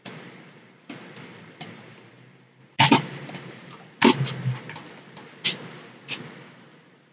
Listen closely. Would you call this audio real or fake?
real